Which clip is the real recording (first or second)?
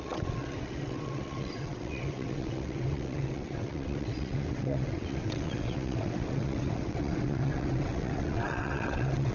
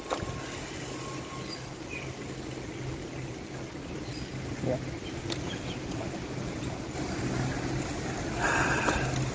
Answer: second